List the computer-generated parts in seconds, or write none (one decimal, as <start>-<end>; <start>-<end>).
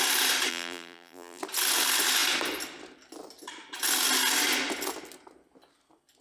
0.5-1.4